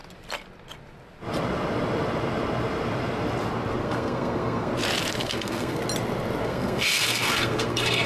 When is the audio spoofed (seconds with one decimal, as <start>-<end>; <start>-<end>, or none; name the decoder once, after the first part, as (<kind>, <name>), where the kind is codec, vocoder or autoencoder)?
3.8-4.7 (codec, SNAC); 5.2-5.8; 6.4-8.1